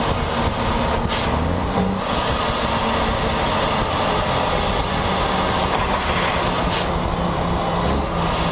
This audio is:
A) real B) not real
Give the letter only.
A